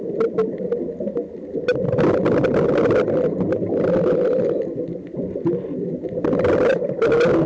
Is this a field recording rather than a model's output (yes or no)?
yes